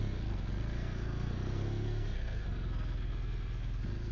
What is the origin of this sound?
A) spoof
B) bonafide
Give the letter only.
A